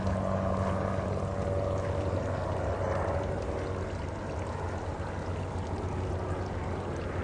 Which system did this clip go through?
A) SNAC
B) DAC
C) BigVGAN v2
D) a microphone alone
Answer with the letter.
D